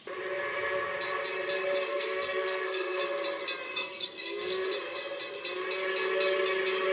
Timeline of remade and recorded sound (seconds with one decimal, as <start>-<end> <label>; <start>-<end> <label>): 0.0-1.9 recorded; 1.9-3.0 remade; 3.0-3.7 recorded; 3.7-4.7 remade; 4.7-6.9 recorded